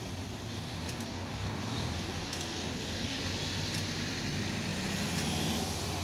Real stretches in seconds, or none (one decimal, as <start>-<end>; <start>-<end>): 0.0-0.5; 3.2-6.0